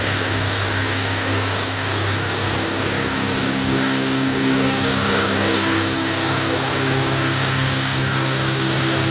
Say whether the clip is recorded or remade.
remade